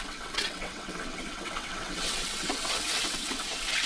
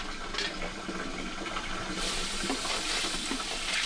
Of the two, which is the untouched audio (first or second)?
second